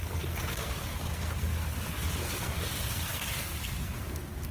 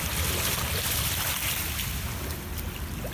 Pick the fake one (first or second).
first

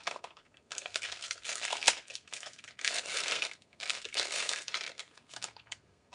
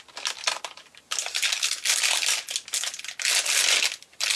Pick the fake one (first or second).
first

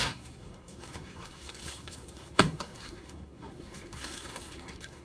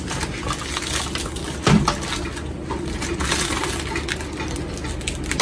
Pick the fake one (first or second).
first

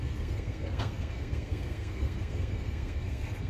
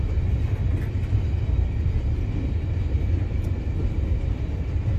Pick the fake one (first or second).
first